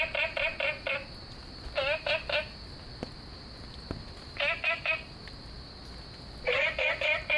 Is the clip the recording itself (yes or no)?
yes